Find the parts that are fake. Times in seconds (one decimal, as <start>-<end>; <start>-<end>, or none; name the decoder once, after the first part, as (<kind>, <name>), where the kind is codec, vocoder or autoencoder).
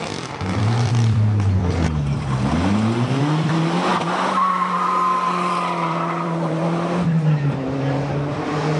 0.0-2.5 (vocoder, BigVGAN v2); 3.2-3.9; 4.5-8.8